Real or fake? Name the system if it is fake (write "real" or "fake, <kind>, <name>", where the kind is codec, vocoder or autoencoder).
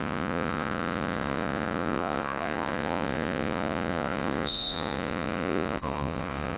fake, vocoder, Vocos